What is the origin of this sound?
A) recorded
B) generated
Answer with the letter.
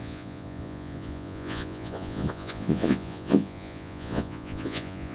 B